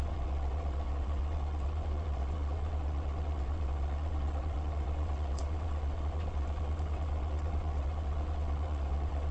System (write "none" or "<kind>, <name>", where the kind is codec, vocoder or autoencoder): vocoder, WaveNeXt